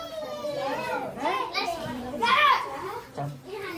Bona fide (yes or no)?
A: no